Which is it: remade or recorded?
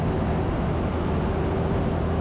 recorded